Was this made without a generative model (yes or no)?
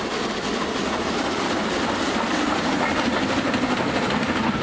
yes